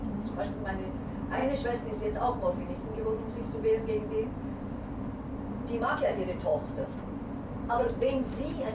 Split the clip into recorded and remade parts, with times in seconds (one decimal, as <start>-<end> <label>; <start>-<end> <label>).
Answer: 0.0-8.7 recorded